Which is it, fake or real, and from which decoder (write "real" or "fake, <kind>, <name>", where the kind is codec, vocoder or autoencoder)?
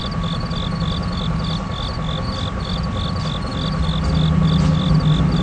real